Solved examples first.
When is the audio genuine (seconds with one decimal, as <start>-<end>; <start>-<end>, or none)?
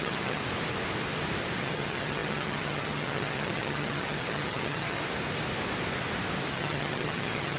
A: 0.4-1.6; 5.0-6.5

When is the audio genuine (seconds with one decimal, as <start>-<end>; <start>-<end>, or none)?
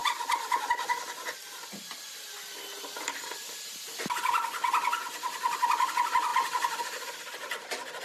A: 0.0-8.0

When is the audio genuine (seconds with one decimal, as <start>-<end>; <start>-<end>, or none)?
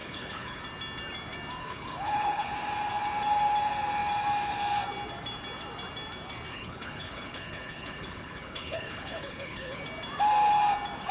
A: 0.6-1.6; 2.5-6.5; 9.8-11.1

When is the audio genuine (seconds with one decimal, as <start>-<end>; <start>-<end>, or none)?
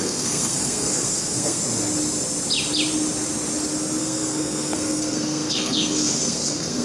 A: 1.6-4.0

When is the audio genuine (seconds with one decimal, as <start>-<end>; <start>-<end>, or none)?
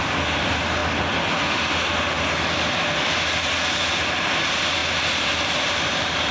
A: 0.8-4.1